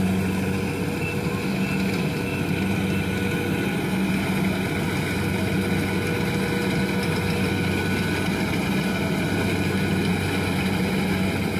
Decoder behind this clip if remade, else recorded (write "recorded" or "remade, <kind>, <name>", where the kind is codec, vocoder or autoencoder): recorded